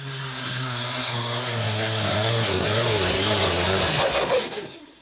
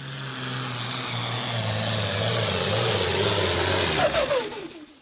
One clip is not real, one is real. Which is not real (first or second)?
first